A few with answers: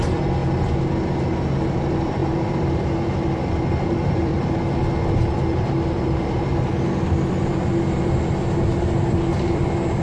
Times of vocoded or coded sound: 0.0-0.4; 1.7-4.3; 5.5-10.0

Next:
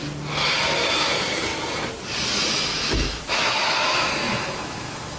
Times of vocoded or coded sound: 0.8-1.5; 2.5-5.2

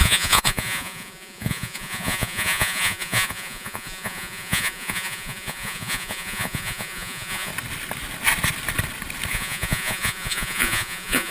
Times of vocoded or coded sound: 0.0-7.5; 9.3-11.3

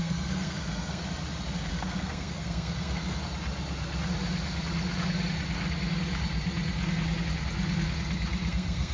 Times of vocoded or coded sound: 0.0-1.0; 1.7-3.2; 8.5-8.9

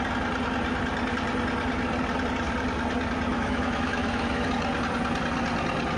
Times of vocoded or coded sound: 3.3-4.5

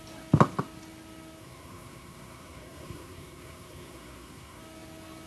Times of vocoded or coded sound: 1.4-4.6

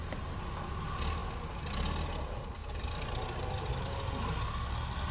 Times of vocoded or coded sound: 2.6-3.8